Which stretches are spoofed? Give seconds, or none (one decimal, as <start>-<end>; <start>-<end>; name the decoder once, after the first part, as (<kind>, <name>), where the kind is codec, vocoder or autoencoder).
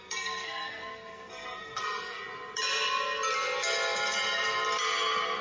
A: 0.0-2.2 (codec, SNAC)